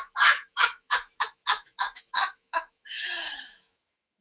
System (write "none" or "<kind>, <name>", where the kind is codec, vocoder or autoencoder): autoencoder, DAC-VAE